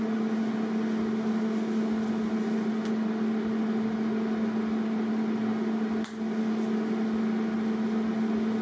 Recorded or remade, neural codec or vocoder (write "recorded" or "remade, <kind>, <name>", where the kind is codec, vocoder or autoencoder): recorded